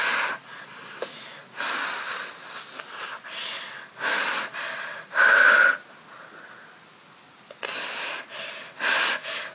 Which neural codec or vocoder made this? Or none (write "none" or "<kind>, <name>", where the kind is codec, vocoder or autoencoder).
none